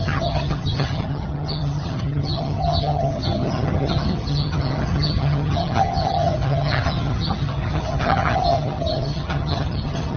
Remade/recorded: remade